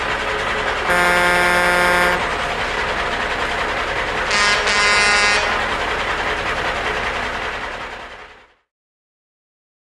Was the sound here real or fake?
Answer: real